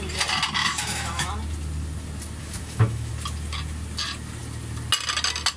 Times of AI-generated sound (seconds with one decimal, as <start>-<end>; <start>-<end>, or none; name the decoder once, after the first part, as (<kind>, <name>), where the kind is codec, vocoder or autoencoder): 0.6-1.3 (autoencoder, DAC-VAE); 2.4-3.1